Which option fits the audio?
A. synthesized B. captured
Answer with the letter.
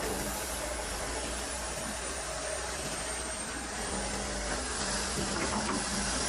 A